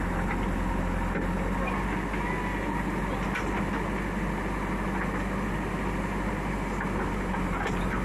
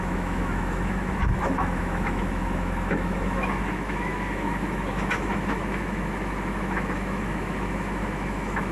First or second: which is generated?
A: second